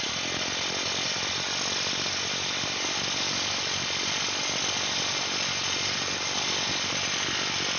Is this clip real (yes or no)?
yes